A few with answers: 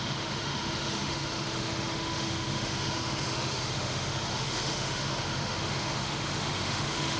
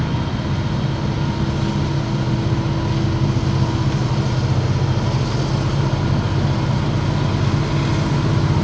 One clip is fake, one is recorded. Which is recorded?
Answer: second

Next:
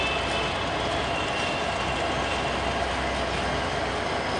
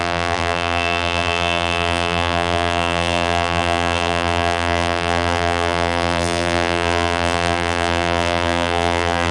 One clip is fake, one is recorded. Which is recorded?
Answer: first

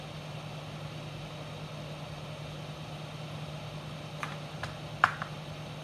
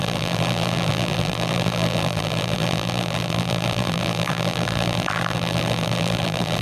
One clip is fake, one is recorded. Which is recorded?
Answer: first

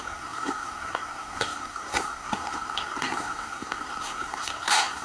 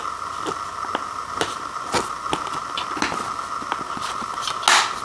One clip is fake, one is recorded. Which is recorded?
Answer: second